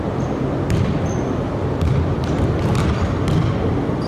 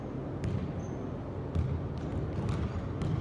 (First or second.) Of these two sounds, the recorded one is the second